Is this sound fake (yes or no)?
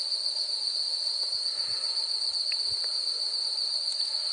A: no